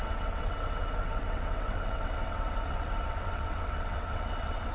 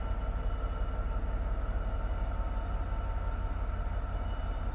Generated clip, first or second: first